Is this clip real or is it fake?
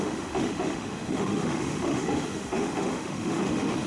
fake